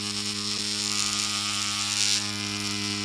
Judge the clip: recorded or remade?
recorded